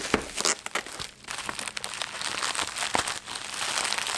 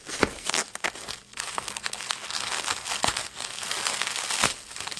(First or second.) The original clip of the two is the first